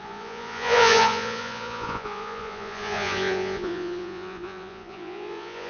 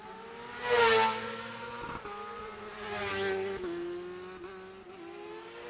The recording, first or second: second